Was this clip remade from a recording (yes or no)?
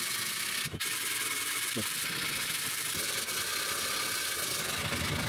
yes